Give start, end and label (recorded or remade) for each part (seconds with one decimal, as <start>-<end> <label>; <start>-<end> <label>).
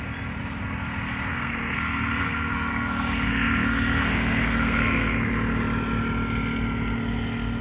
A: 0.0-1.3 recorded; 1.3-5.3 remade; 5.3-7.6 recorded